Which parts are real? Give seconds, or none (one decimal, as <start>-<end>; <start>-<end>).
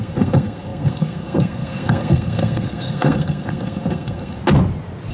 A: 4.4-5.1